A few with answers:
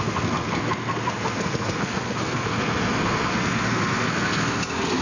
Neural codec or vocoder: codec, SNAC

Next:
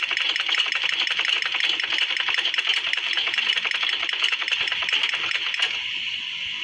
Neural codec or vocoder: none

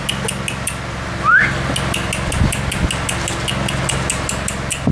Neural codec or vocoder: none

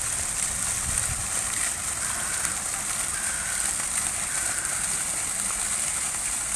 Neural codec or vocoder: none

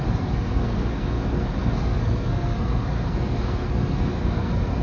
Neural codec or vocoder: codec, SNAC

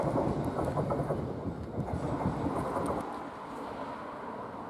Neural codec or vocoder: none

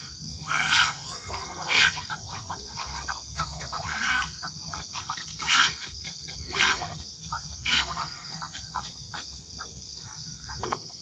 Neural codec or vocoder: codec, SNAC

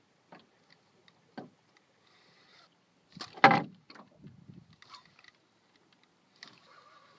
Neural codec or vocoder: none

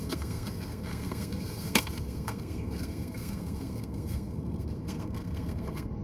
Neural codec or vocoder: codec, SNAC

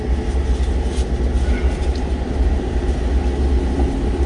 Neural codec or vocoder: none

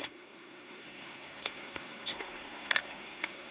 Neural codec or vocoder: codec, SNAC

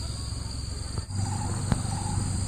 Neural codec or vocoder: none